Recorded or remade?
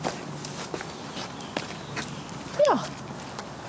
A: recorded